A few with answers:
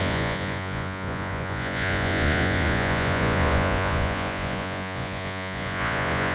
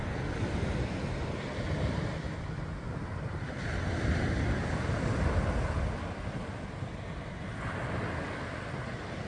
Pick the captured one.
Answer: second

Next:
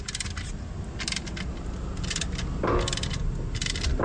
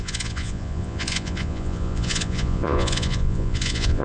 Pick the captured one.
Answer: first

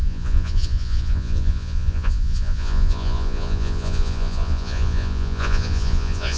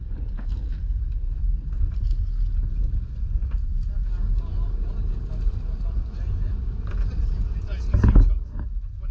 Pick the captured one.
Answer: second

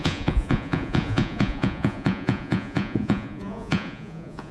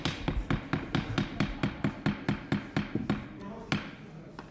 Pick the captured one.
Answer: second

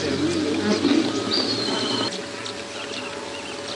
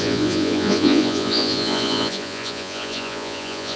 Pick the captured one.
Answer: first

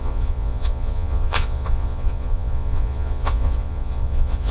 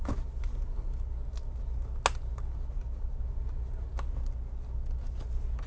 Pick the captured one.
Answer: second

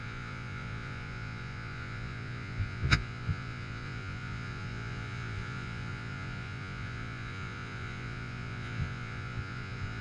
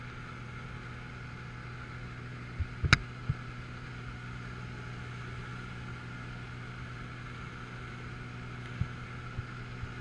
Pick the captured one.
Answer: second